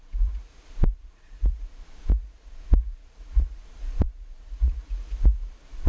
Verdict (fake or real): fake